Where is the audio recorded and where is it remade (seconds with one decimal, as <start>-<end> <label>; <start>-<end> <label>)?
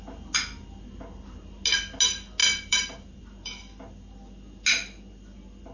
0.0-2.4 recorded; 2.4-3.2 remade; 3.2-5.7 recorded